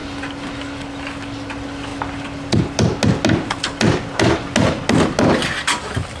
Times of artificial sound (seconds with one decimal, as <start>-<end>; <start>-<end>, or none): none